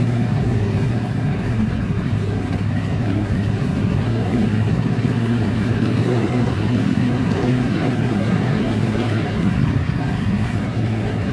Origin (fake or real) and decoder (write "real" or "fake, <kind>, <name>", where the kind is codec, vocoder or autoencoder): fake, codec, SNAC